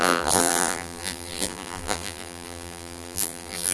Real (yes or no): no